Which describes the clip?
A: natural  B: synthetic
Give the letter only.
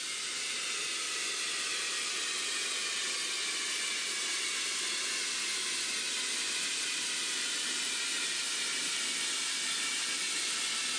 A